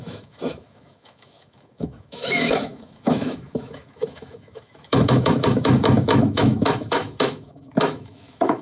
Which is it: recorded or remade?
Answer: remade